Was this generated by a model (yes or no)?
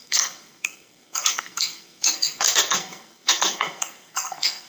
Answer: yes